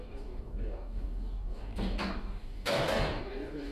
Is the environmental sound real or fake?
fake